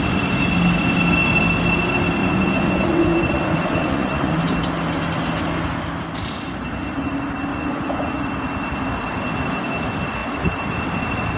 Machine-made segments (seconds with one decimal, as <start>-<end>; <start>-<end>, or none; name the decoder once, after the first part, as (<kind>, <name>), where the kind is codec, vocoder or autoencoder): 2.2-4.4 (vocoder, Vocos); 7.5-8.1